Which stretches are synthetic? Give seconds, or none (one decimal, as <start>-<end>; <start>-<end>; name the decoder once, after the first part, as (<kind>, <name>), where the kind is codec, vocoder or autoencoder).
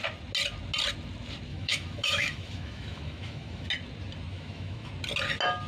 1.5-3.7 (autoencoder, DAC-VAE); 4.3-4.9